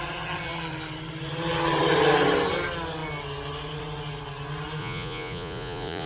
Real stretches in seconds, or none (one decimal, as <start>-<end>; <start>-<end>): 0.0-4.8